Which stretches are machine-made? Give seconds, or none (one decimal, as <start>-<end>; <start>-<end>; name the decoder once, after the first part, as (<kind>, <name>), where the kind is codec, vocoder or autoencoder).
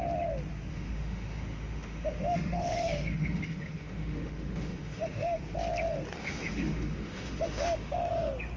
0.7-5.4 (autoencoder, DAC-VAE); 6.2-8.1